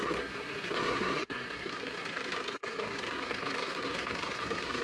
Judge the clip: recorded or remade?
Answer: remade